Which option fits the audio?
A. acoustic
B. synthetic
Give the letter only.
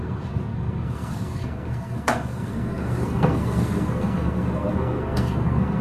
B